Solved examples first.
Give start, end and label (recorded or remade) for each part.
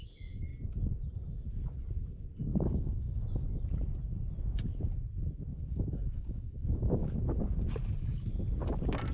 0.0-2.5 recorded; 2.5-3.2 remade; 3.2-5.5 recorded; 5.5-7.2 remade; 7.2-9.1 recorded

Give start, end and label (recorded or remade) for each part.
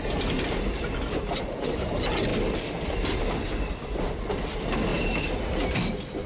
0.0-6.3 recorded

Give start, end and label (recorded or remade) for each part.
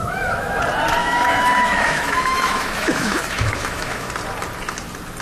0.0-0.6 remade; 0.6-1.0 recorded; 1.0-4.1 remade; 4.1-5.2 recorded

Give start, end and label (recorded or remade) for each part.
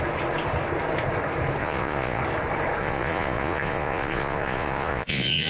0.0-1.6 recorded; 1.6-2.2 remade; 2.2-2.8 recorded; 2.8-5.5 remade